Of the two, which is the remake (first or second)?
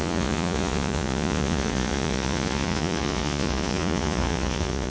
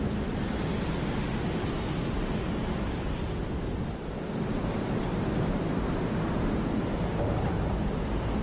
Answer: first